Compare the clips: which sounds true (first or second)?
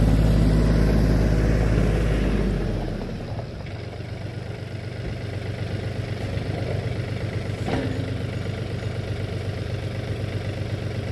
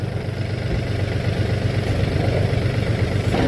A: first